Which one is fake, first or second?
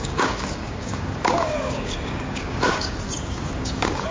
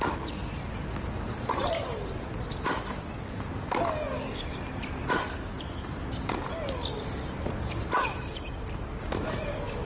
first